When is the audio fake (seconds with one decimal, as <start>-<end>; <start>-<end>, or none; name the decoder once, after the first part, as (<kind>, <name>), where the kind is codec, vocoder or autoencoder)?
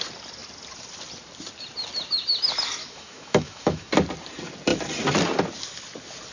2.8-3.9 (autoencoder, DAC-VAE)